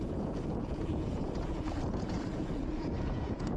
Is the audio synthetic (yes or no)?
yes